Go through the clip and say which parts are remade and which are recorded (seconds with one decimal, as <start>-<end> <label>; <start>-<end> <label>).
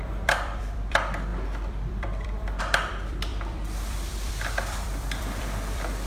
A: 0.0-6.1 remade